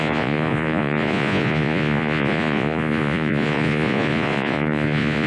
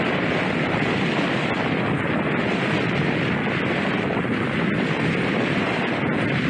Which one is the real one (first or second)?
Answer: second